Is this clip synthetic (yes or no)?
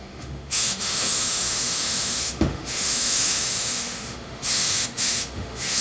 yes